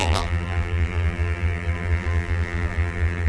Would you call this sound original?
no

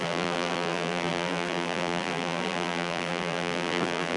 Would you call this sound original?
no